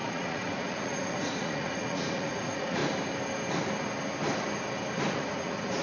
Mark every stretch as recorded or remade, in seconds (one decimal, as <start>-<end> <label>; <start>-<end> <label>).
0.0-2.8 remade; 2.8-5.1 recorded; 5.1-5.8 remade